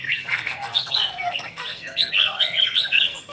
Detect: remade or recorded remade